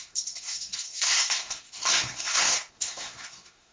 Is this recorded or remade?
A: remade